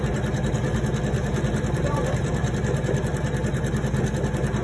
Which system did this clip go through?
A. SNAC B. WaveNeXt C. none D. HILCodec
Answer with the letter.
C